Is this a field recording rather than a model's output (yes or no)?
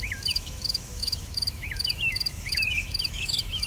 no